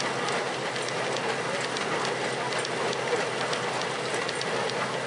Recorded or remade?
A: recorded